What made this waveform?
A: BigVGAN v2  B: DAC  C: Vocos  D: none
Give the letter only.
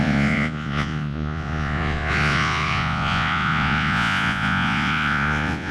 C